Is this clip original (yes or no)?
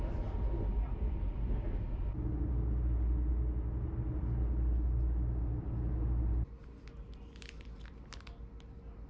yes